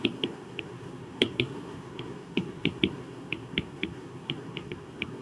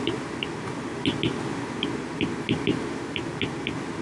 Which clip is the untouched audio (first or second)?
second